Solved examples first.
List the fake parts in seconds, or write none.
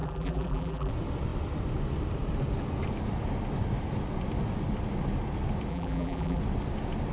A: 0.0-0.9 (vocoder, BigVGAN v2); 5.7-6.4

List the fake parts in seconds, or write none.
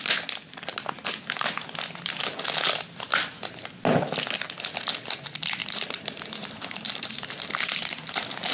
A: 5.6-7.3 (vocoder, BigVGAN v2)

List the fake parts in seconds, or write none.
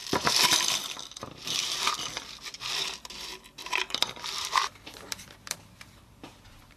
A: 0.0-2.4 (vocoder, BigVGAN v2); 3.6-6.8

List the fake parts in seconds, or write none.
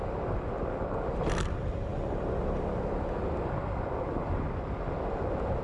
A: none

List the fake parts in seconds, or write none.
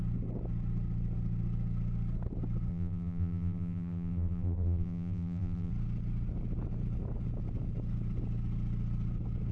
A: 2.7-5.7 (vocoder, BigVGAN v2)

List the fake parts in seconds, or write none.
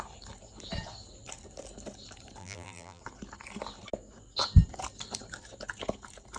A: 2.4-3.0 (vocoder, BigVGAN v2)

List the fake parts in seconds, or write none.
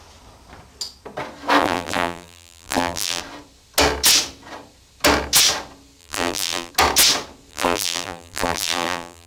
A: 1.6-3.2 (vocoder, BigVGAN v2); 6.0-6.7; 7.5-9.3